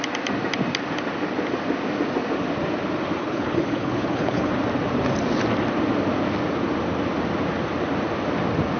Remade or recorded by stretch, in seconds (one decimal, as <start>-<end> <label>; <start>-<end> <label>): 0.0-3.2 recorded; 3.2-4.5 remade; 4.5-8.8 recorded